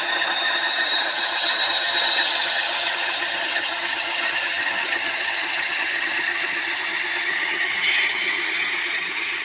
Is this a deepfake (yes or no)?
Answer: yes